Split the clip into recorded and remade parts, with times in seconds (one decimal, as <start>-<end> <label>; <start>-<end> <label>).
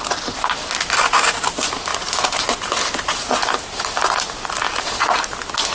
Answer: 0.0-5.7 recorded